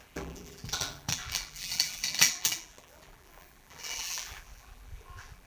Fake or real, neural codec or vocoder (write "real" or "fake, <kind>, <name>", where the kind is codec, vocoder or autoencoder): fake, vocoder, BigVGAN v2